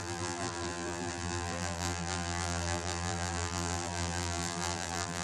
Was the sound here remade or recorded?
remade